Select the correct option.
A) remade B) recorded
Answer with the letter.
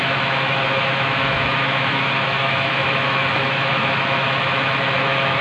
A